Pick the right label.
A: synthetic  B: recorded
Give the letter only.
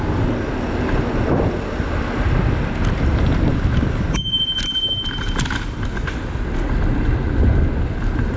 B